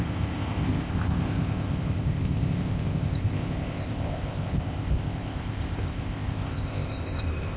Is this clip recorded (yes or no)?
no